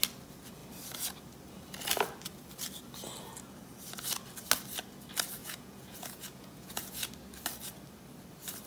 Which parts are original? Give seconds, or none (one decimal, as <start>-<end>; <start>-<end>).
0.0-5.4; 7.1-8.7